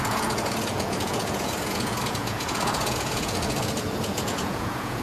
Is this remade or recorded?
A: remade